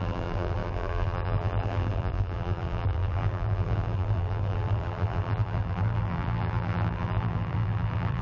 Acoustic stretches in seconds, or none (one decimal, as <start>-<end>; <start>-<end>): none